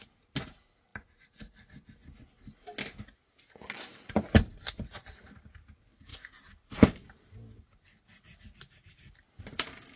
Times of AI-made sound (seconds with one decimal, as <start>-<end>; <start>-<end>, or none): none